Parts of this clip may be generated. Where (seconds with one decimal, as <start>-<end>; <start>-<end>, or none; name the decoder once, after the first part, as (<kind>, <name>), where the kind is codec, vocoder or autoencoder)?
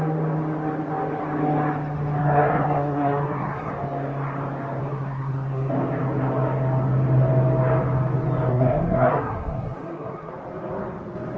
2.2-3.7 (codec, SNAC); 4.8-5.7; 8.5-10.3